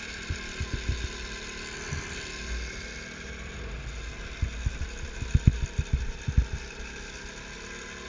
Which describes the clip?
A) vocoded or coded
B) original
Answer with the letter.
B